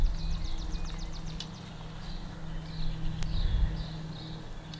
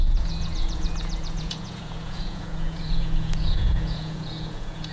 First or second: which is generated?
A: second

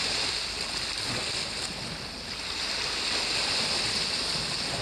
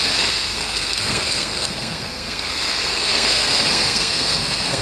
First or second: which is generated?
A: second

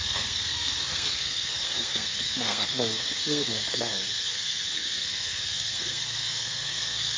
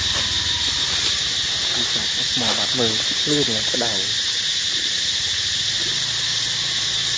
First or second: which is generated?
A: first